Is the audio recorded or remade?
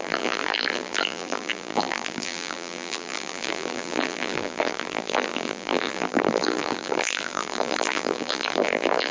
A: remade